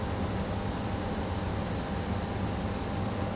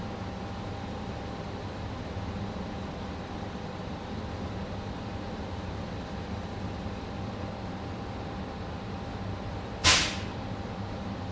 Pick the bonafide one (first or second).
first